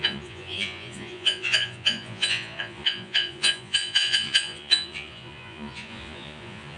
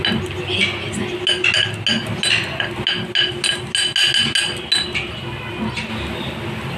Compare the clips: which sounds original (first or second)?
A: second